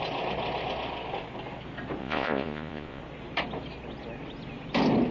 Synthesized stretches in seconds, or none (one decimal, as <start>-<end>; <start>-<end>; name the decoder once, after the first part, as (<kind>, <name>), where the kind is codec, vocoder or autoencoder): 2.0-3.0 (vocoder, Vocos)